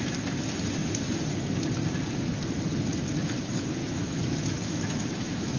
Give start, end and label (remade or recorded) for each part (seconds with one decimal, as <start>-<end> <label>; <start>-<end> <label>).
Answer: 0.0-3.8 recorded; 3.8-5.6 remade